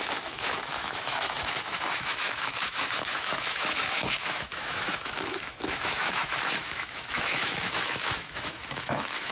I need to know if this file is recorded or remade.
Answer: remade